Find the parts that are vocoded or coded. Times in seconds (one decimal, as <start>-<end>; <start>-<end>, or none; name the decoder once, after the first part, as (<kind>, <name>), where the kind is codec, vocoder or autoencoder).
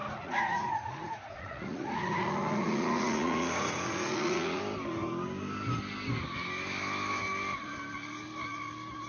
0.0-4.6 (vocoder, Vocos)